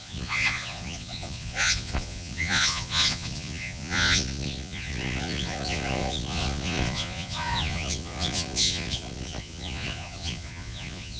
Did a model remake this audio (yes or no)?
yes